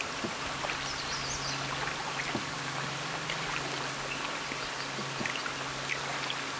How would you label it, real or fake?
real